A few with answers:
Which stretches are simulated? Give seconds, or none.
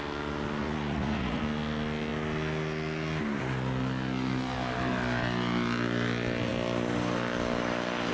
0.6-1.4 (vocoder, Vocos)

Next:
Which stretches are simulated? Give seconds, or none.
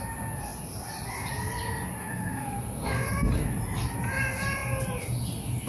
2.0-3.1 (codec, SNAC)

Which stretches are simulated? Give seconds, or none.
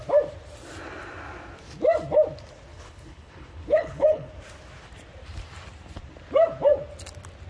2.7-4.3 (codec, HILCodec)